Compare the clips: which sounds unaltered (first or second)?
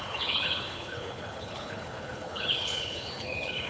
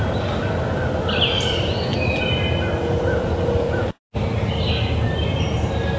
second